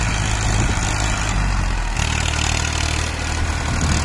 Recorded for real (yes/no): yes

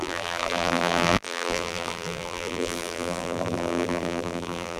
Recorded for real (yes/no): no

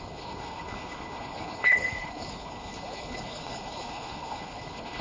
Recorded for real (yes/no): no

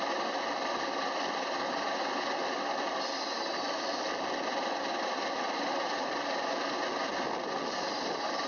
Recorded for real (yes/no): yes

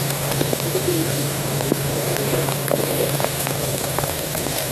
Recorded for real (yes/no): no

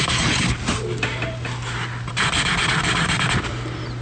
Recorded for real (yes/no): yes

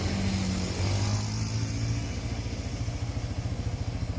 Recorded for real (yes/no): yes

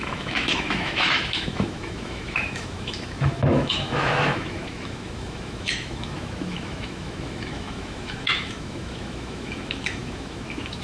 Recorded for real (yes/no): no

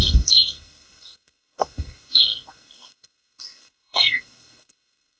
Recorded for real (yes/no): no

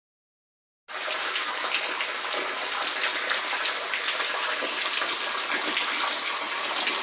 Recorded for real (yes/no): yes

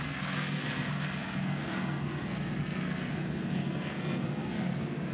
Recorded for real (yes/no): no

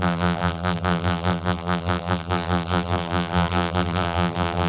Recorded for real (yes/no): no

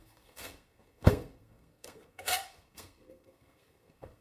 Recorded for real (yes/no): no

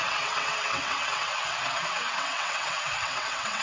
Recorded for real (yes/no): no